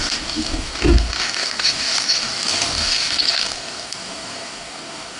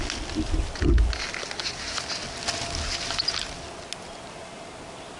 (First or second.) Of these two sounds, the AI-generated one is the first